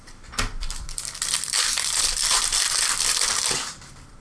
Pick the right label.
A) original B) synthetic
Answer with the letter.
B